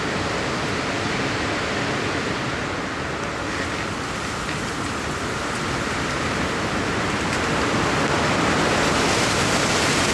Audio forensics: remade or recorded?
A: recorded